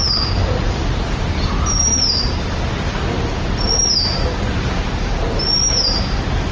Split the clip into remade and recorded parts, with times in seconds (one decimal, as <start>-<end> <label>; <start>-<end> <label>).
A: 0.0-6.5 recorded